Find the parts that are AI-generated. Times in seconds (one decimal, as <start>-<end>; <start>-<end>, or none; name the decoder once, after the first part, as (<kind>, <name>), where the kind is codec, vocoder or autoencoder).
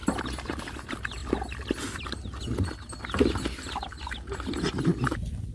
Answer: none